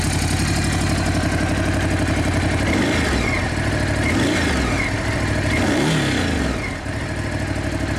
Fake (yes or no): no